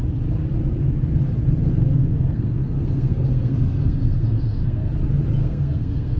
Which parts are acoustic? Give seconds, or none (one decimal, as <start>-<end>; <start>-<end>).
0.0-1.6; 4.9-5.4